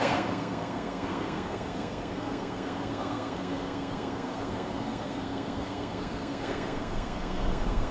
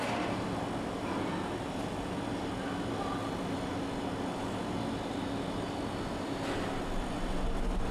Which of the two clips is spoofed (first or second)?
first